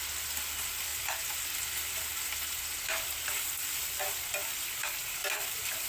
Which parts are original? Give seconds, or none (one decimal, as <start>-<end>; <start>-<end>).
0.0-5.2

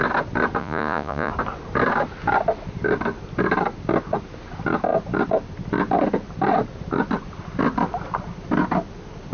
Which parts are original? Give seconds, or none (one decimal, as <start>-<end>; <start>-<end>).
0.0-0.6; 1.3-9.3